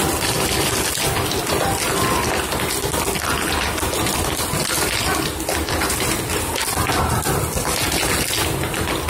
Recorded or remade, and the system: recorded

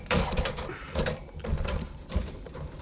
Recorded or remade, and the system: remade, vocoder, BigVGAN v2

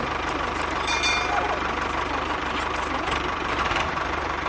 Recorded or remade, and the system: remade, vocoder, BigVGAN v2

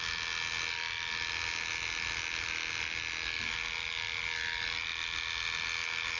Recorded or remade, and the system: recorded